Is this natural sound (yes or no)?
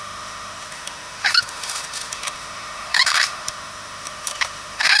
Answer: no